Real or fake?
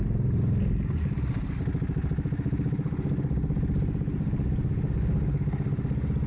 real